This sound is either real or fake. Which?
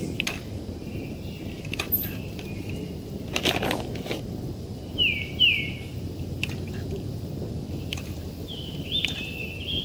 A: real